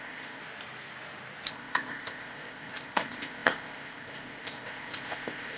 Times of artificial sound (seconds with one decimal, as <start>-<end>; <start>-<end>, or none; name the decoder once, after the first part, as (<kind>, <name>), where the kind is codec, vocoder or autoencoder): 0.0-0.4 (codec, ZipCodec); 1.5-5.6